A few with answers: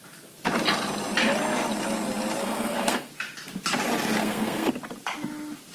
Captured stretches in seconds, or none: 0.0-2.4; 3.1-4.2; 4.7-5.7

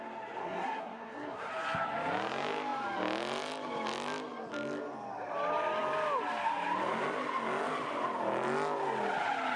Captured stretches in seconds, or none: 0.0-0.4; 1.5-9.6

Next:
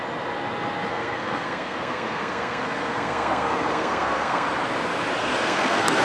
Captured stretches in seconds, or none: 0.0-0.9; 4.5-5.2

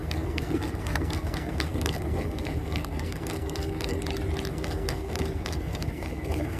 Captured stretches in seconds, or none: 4.0-4.5

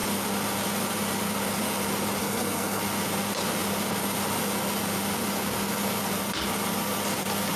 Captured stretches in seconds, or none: 0.0-2.2; 2.8-7.6

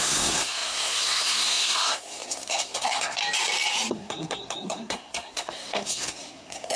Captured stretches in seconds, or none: 3.2-3.9